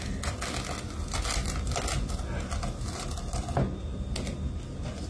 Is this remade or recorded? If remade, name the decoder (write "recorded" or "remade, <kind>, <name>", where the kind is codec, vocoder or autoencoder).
recorded